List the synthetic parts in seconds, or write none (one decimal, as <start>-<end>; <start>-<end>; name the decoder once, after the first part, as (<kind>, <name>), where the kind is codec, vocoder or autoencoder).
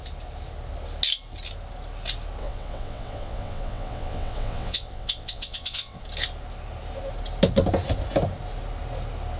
2.4-6.0 (vocoder, WaveNeXt)